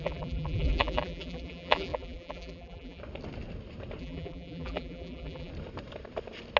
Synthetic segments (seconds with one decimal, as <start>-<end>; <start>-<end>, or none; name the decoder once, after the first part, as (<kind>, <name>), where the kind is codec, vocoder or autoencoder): 0.0-3.0 (vocoder, BigVGAN v2); 4.0-5.5